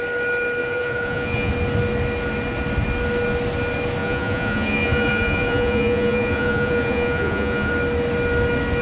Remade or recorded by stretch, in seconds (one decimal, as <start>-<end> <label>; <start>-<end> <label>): 0.0-0.6 recorded; 0.6-1.5 remade; 1.5-4.0 recorded; 4.0-7.7 remade; 7.7-8.8 recorded